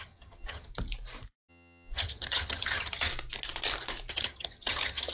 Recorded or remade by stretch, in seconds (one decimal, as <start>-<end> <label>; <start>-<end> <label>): 0.0-0.7 remade; 0.7-1.5 recorded; 1.5-3.1 remade; 3.1-4.1 recorded; 4.1-5.1 remade